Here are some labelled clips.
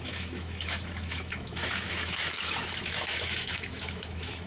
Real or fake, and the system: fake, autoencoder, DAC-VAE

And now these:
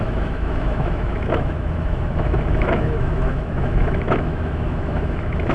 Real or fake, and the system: fake, autoencoder, DAC-VAE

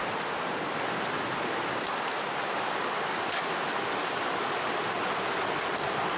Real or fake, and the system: real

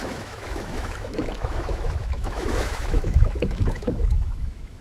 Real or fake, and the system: fake, autoencoder, DAC-VAE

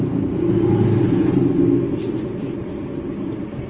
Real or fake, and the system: real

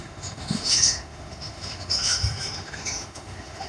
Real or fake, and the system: fake, autoencoder, DAC-VAE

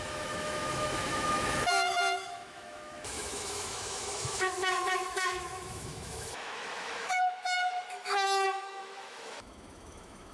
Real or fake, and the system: fake, autoencoder, DAC-VAE